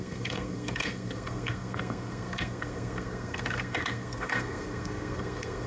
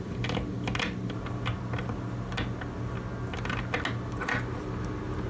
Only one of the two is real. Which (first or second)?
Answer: second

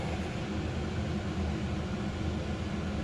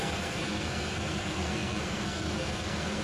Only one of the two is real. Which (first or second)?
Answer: first